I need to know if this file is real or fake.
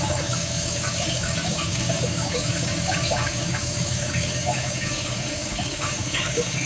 fake